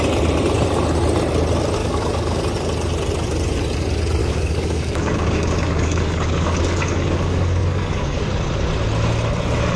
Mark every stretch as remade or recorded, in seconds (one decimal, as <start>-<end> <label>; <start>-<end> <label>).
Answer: 0.0-1.8 recorded; 1.8-2.4 remade; 2.4-4.2 recorded; 4.2-8.2 remade; 8.2-9.8 recorded